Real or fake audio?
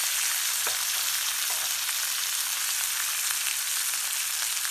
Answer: real